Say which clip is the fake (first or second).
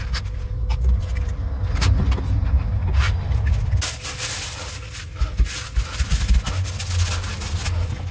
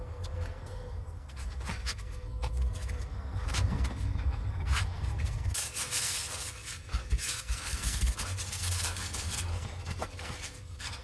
second